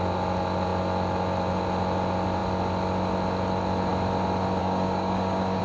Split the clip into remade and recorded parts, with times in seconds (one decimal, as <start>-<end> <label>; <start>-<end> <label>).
0.0-4.6 recorded; 4.6-5.6 remade